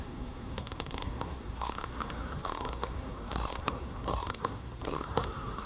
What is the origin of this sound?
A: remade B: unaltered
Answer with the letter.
A